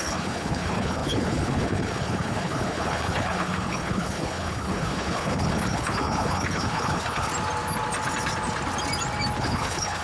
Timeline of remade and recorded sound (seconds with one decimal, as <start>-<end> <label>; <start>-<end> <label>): 0.0-7.3 remade; 7.3-9.4 recorded; 9.4-10.0 remade